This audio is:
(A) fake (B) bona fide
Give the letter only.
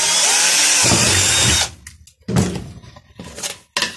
B